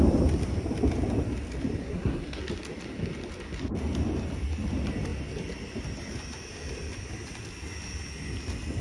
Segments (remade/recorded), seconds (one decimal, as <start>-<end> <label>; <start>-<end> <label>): 0.0-1.8 recorded; 1.8-2.4 remade; 2.4-8.8 recorded